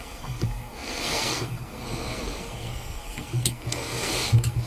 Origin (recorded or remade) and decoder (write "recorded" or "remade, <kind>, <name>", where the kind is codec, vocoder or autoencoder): remade, codec, SNAC